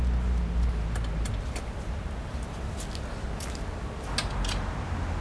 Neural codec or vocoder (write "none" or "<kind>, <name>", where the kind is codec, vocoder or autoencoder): none